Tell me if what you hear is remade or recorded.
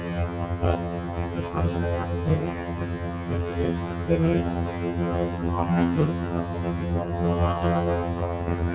remade